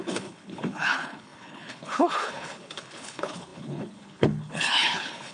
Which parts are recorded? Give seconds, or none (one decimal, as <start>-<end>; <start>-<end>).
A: none